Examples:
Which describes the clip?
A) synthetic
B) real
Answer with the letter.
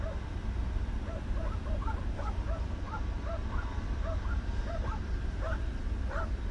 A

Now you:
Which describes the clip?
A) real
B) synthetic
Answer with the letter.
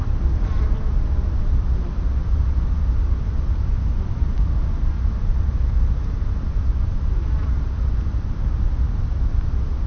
A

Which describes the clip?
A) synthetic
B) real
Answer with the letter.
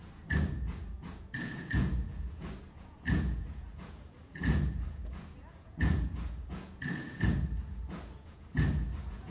A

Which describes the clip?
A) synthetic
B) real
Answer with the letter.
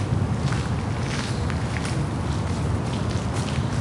B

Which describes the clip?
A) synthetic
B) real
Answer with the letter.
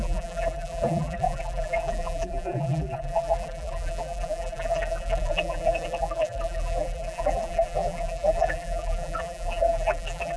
A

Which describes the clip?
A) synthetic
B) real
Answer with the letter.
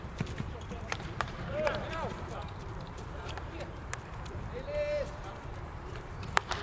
A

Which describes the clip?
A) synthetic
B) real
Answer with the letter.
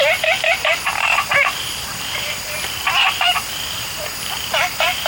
A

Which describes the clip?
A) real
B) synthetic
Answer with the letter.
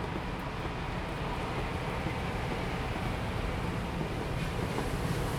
B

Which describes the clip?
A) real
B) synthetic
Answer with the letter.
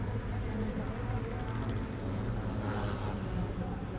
A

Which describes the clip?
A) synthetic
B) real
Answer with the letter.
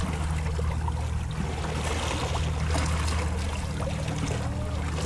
B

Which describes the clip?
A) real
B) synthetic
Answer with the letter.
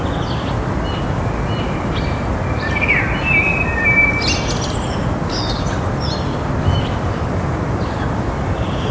A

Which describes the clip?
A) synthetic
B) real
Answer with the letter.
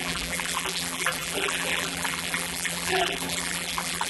A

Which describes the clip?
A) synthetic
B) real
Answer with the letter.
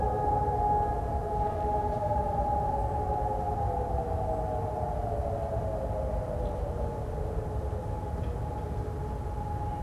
B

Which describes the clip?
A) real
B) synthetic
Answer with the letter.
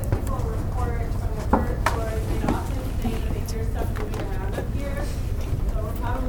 A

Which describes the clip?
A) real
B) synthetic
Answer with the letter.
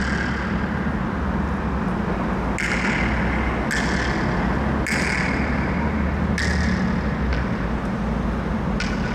A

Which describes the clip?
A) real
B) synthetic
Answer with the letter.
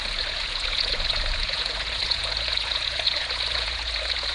B